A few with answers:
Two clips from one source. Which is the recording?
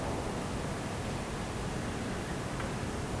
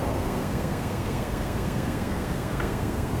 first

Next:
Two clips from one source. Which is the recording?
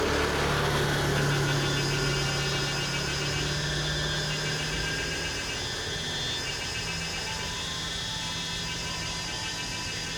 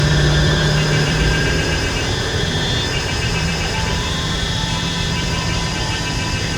first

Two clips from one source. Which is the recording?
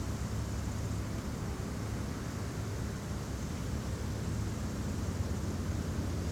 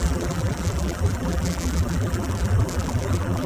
first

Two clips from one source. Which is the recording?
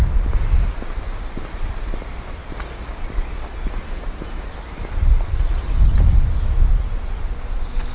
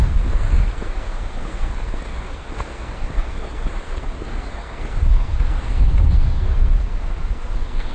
first